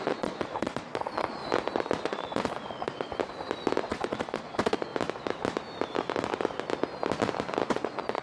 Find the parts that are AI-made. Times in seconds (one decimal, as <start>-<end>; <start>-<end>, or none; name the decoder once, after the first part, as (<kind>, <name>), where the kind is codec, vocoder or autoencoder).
0.0-1.4 (vocoder, Vocos); 2.0-3.1; 3.8-4.9; 7.7-8.2

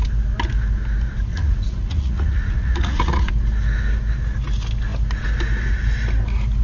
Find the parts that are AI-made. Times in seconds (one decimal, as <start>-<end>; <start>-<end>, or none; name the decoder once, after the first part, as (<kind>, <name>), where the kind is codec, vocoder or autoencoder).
1.3-3.3 (vocoder, Vocos)

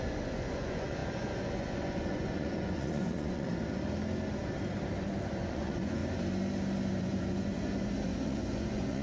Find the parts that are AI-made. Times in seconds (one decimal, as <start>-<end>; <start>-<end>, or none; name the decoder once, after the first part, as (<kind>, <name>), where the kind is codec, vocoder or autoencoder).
0.0-3.5 (vocoder, Vocos); 5.3-6.0; 7.0-9.0